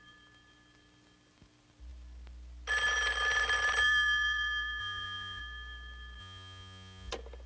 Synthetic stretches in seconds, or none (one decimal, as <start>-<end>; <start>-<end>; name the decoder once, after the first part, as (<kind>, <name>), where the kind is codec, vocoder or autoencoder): 4.8-5.4 (vocoder, Vocos); 6.2-7.1